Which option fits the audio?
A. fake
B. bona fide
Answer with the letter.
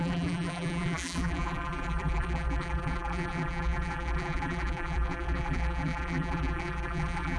A